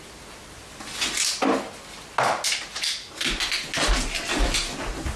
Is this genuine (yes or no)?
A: yes